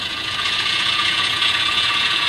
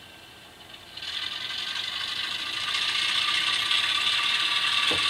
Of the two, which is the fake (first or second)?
first